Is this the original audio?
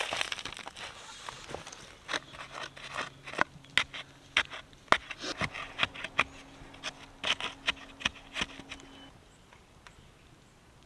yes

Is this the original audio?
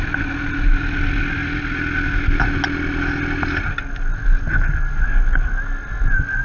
yes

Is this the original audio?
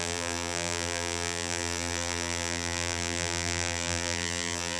no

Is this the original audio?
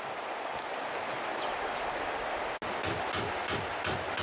yes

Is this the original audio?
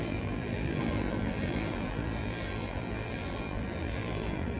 no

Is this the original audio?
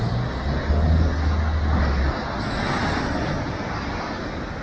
yes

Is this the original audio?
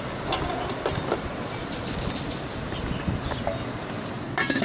yes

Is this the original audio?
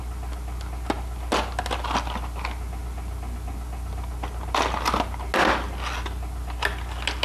yes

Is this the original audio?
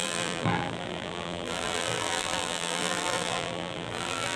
no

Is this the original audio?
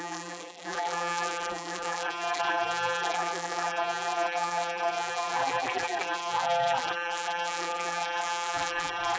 no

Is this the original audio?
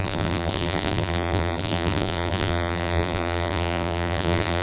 no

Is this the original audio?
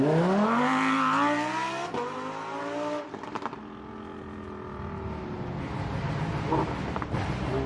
yes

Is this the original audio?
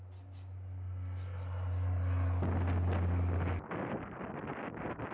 yes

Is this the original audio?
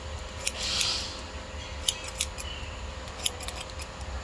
yes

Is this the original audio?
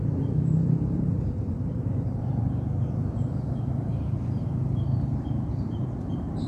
no